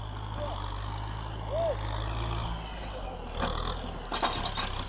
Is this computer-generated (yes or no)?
no